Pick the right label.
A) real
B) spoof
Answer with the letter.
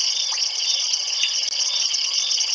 A